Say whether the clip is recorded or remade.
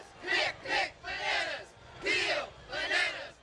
remade